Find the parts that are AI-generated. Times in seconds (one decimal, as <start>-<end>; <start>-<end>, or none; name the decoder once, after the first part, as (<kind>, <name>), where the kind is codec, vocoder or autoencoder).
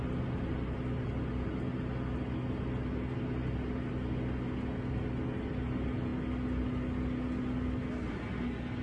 none